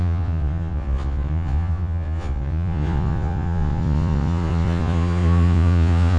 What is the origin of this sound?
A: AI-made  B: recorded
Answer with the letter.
A